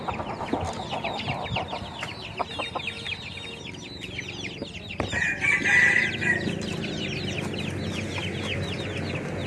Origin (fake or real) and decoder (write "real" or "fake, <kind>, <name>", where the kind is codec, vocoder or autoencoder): real